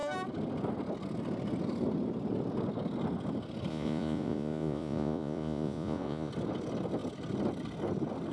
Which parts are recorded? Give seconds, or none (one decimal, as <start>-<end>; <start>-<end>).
0.0-3.7; 6.3-8.3